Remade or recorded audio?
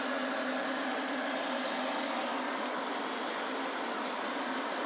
recorded